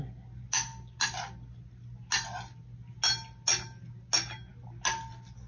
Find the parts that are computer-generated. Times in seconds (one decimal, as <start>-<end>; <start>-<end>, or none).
none